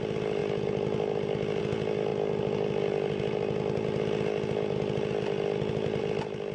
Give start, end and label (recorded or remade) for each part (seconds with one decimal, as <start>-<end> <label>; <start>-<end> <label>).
0.0-6.5 recorded